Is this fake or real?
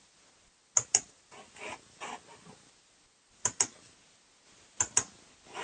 real